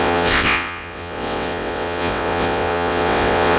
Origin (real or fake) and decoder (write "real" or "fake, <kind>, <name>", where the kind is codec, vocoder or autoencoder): fake, vocoder, WaveNeXt